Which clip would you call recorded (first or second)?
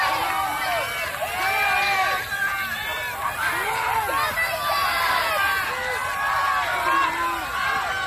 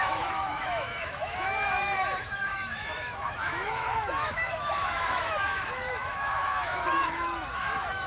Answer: first